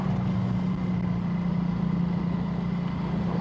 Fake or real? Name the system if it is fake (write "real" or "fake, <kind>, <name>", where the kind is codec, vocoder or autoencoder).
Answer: real